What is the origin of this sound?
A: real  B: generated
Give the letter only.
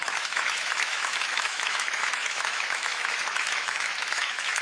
B